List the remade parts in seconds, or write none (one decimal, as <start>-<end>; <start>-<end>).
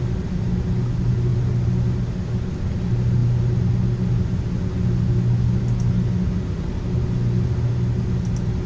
none